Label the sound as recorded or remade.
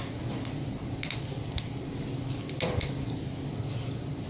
recorded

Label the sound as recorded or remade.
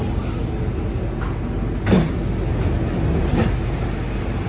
recorded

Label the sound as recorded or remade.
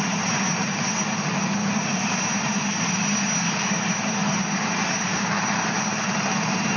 recorded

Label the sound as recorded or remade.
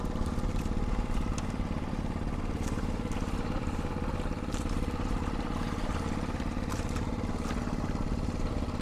remade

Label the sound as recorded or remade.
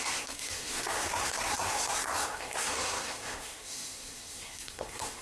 remade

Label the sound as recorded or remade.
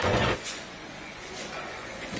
remade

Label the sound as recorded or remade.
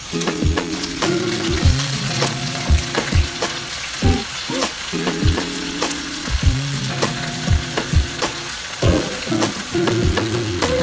remade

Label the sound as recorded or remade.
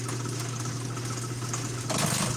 recorded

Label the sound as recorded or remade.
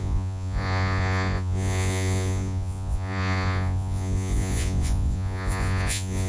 remade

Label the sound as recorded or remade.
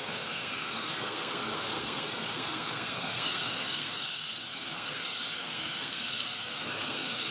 remade